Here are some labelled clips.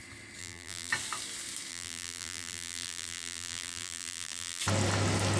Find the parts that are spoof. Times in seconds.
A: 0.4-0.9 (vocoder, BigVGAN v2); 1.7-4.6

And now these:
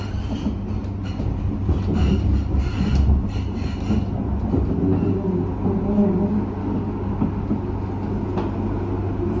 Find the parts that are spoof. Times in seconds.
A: 6.6-7.1 (codec, DAC)

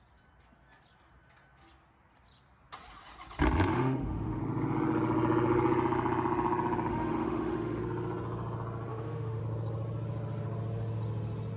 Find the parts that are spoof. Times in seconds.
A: 3.7-4.4 (autoencoder, DAC-VAE); 6.9-7.8; 8.9-9.4

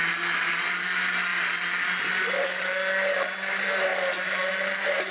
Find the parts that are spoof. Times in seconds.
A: none

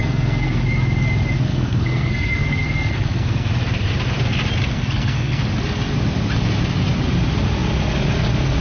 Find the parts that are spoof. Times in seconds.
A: 0.0-0.6 (codec, SNAC); 1.5-3.5; 4.7-5.4

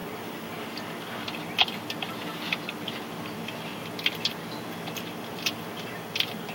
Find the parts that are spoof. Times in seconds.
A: none